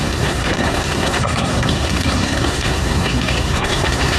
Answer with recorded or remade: remade